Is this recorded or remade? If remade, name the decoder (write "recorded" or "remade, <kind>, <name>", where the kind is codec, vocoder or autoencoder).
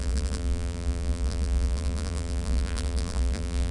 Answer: remade, vocoder, BigVGAN v2